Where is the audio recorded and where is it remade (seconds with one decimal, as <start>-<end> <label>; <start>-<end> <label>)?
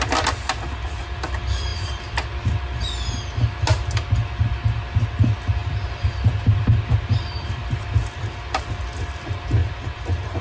0.0-5.6 recorded; 5.6-8.3 remade; 8.3-9.6 recorded; 9.6-10.4 remade